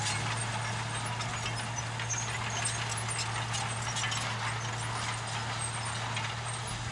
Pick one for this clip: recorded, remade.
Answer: recorded